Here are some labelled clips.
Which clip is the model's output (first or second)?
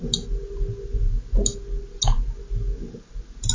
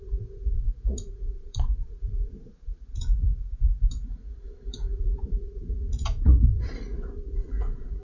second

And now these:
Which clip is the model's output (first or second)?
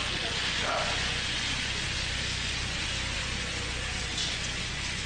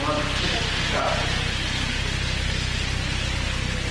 first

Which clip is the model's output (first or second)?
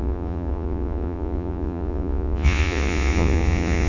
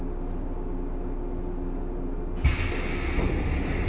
first